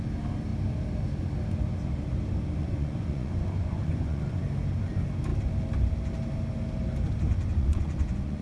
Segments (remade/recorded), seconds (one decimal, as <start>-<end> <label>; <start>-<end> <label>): 0.0-2.6 recorded; 2.6-4.4 remade; 4.4-7.5 recorded; 7.5-8.4 remade